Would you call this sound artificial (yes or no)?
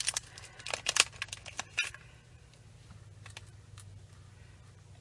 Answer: no